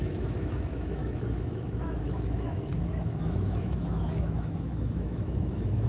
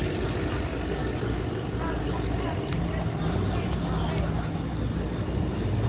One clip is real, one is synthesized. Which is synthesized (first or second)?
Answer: first